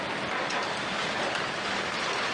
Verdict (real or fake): real